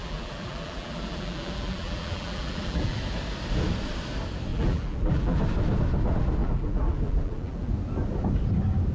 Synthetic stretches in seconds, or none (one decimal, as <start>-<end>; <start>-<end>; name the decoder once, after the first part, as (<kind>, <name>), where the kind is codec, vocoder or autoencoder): 0.0-3.0 (vocoder, BigVGAN v2); 4.5-5.4; 6.4-7.7